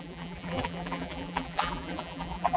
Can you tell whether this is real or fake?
fake